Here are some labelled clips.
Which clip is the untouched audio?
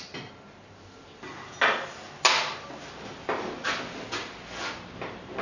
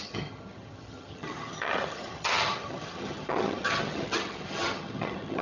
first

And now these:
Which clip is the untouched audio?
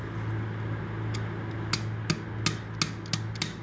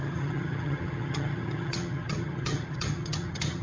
first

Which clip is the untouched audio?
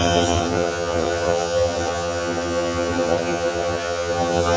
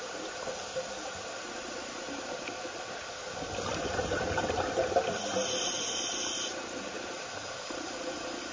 second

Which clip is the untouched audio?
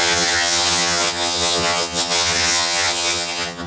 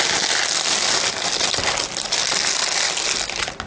second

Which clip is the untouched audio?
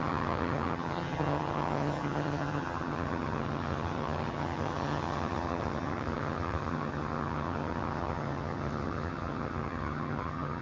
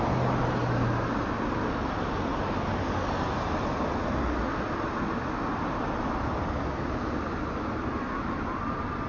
second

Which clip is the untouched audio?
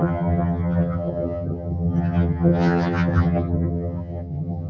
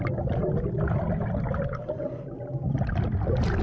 second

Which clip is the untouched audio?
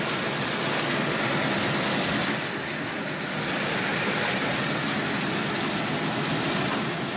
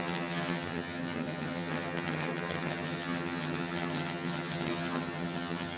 first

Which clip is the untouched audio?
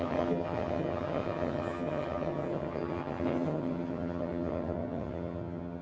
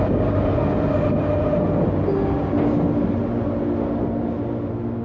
second